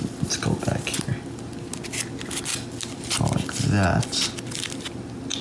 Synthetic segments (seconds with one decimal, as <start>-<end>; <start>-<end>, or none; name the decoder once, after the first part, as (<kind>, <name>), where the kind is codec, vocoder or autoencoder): none